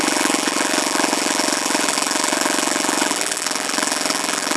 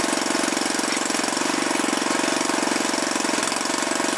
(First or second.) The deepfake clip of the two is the first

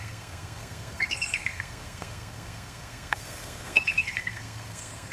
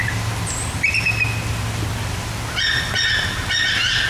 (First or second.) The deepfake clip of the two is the first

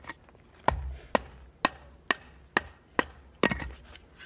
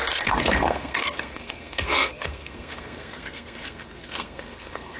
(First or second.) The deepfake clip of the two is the second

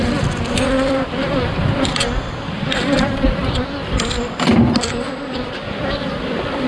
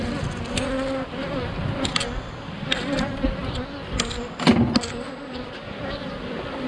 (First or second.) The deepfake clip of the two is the first